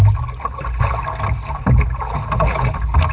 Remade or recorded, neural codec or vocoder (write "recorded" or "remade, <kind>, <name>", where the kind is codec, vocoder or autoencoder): recorded